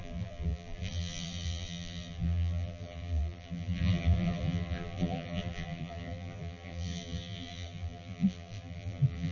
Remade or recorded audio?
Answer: remade